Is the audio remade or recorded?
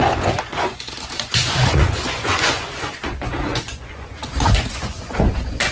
remade